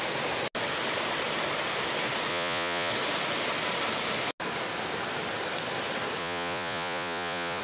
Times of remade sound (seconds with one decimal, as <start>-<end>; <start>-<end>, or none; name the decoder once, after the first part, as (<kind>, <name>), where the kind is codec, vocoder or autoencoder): 2.3-2.9 (vocoder, Vocos); 6.2-7.6